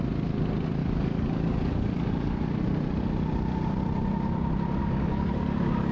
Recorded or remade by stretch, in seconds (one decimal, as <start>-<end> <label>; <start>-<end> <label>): 0.0-0.8 recorded; 0.8-2.4 remade; 2.4-4.8 recorded; 4.8-5.9 remade